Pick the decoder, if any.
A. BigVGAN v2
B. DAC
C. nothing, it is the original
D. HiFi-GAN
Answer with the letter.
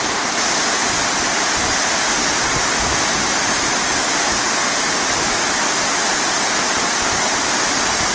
C